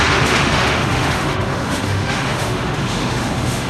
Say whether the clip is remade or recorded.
remade